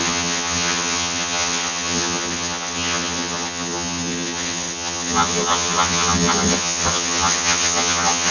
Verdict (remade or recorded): remade